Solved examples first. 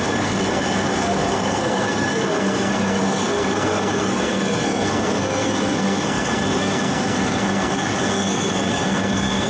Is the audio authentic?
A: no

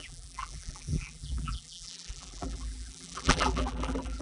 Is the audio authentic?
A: no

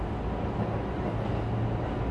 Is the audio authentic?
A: yes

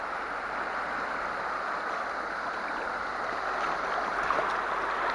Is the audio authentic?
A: yes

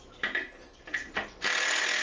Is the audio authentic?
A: yes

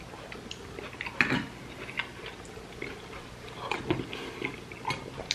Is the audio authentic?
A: yes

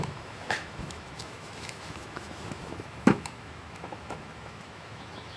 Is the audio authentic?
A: no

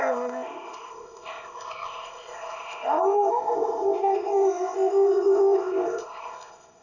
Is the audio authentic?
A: no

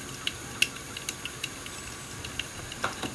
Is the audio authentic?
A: yes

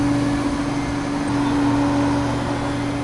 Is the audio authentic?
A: yes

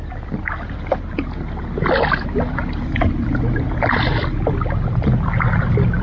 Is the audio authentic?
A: yes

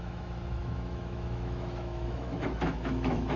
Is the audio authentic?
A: no